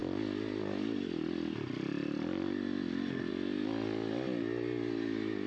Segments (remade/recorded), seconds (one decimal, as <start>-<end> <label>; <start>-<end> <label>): 0.0-5.5 recorded